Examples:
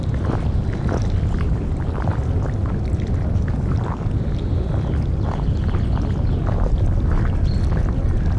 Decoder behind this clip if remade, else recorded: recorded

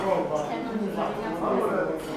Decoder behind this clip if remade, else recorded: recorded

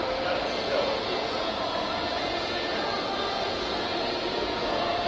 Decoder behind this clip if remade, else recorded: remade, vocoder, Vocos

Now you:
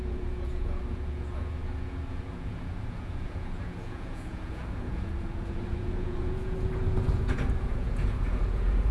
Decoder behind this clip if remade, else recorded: remade, vocoder, Vocos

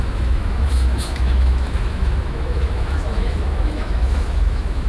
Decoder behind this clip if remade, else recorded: remade, autoencoder, DAC-VAE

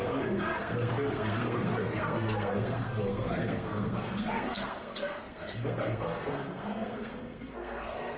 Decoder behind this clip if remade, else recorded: remade, codec, SNAC